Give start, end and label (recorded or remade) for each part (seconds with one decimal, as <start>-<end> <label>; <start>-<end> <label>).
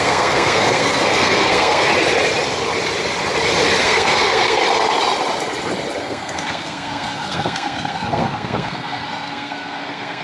0.0-1.9 remade; 1.9-3.8 recorded; 3.8-4.6 remade; 4.6-6.0 recorded; 6.0-10.2 remade